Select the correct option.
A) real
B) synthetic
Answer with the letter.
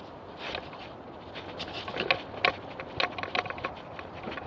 A